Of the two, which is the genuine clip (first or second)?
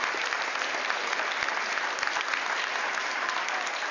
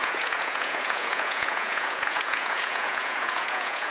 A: first